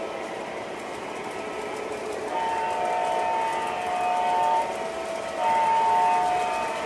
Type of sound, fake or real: real